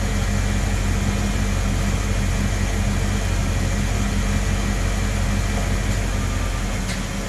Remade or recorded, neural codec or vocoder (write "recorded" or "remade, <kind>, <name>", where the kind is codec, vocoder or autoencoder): recorded